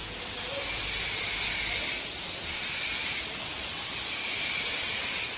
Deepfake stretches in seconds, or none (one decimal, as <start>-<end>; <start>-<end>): 3.0-4.9